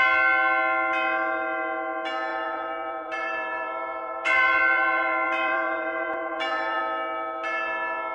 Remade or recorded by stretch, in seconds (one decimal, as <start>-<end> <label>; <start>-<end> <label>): 0.0-2.3 recorded; 2.3-6.8 remade; 6.8-8.1 recorded